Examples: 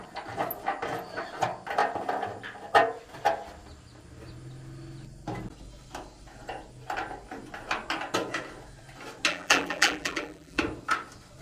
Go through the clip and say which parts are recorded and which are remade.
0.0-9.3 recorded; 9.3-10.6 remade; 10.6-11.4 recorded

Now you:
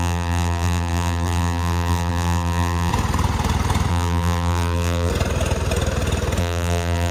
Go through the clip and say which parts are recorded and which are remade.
0.0-2.9 remade; 2.9-3.9 recorded; 3.9-5.1 remade; 5.1-6.4 recorded; 6.4-7.1 remade

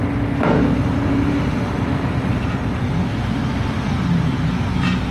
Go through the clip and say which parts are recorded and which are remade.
0.0-0.9 recorded; 0.9-2.6 remade; 2.6-5.1 recorded

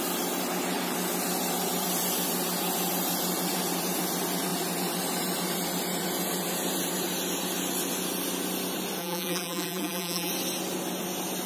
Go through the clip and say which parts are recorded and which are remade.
0.0-9.0 recorded; 9.0-10.3 remade; 10.3-11.5 recorded